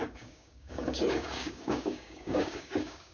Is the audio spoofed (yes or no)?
yes